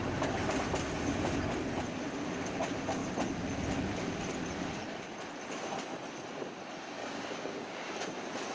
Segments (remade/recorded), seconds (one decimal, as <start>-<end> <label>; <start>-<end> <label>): 0.0-7.0 recorded; 7.0-7.9 remade; 7.9-8.5 recorded